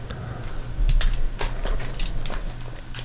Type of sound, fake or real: real